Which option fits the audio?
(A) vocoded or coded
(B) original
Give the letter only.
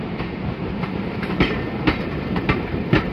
A